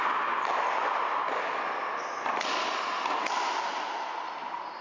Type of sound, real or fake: real